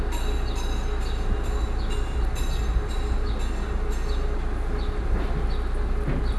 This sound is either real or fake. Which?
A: real